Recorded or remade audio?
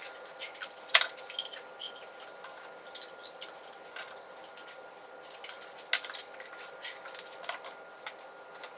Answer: recorded